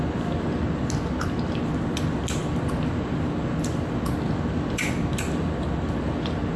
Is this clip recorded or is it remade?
recorded